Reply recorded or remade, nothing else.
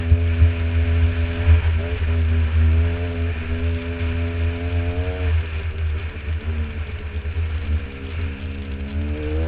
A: recorded